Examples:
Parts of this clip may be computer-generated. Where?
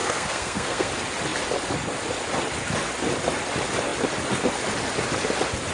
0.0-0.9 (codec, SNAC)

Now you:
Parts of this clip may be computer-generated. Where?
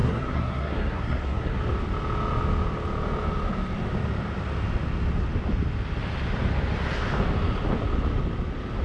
0.0-1.6 (codec, SNAC)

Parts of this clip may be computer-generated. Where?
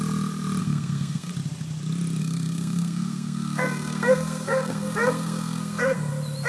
0.6-1.3 (codec, SNAC); 2.2-6.1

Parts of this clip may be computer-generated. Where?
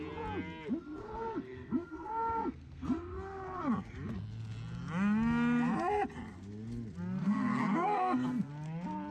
1.0-3.7 (codec, SNAC); 7.2-8.5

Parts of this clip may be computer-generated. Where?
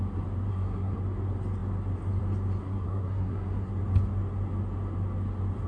0.5-1.0 (codec, SNAC); 2.6-3.7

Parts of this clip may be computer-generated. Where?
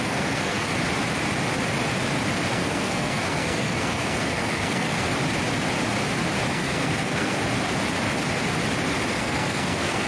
0.0-0.7 (codec, SNAC); 2.5-5.1; 6.5-7.4; 9.1-10.1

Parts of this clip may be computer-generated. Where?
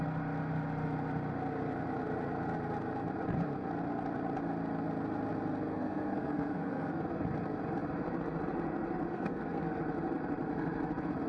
5.7-7.0 (codec, SNAC); 9.1-9.8